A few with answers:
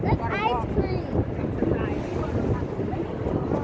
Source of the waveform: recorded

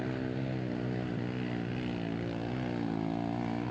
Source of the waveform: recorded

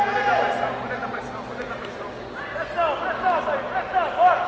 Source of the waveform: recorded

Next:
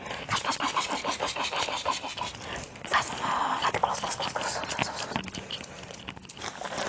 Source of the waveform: recorded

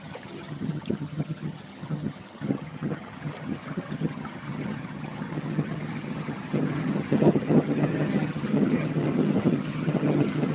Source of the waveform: remade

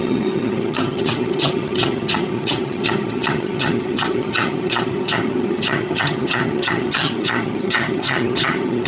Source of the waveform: remade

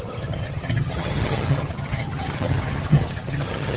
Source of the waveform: remade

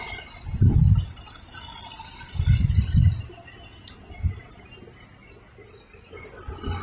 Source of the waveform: recorded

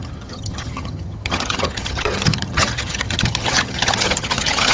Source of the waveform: remade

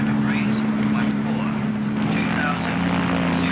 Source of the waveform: recorded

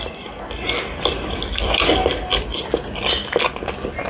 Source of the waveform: recorded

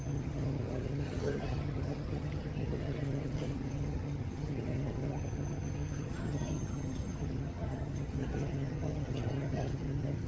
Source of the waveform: remade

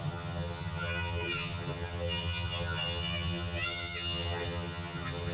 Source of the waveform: remade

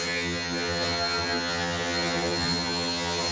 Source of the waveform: remade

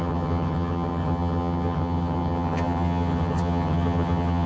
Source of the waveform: remade